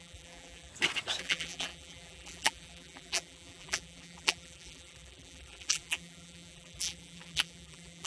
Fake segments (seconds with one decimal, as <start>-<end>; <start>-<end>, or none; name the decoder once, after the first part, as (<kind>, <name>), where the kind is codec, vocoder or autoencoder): 0.0-0.7 (vocoder, BigVGAN v2); 1.2-8.1